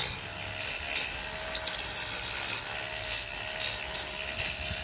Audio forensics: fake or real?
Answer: real